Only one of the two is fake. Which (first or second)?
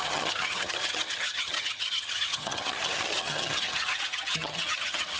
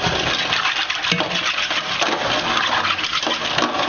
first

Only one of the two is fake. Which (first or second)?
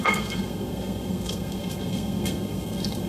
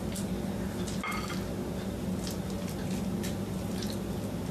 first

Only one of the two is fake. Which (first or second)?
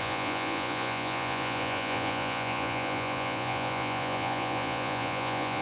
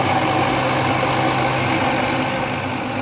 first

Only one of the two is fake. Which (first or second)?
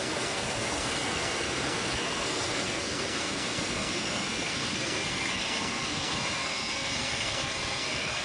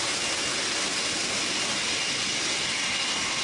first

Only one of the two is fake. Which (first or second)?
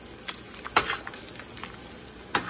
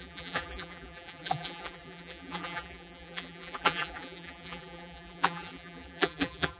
second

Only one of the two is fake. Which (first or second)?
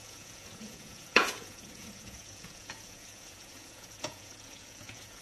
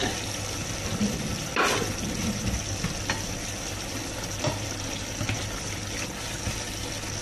first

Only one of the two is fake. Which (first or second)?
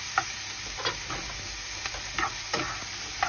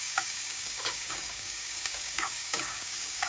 second